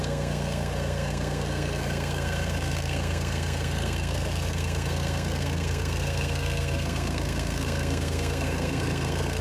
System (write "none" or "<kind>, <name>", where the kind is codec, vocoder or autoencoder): codec, SNAC